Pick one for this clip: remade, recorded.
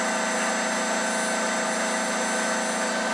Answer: recorded